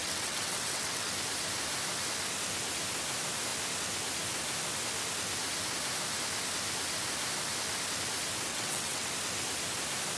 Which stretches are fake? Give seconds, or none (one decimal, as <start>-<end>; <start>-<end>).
0.0-1.1; 8.5-9.1